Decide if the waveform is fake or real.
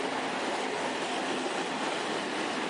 real